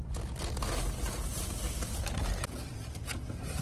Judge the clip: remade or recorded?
recorded